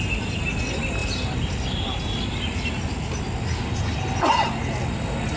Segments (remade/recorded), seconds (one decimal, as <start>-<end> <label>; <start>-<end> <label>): 0.0-5.4 recorded